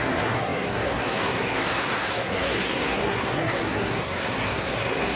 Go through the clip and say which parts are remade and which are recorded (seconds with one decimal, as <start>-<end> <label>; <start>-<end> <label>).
0.0-5.2 remade